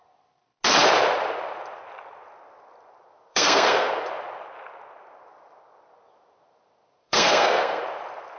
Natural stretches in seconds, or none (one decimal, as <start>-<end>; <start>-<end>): 0.0-3.3; 3.9-7.0; 7.8-8.4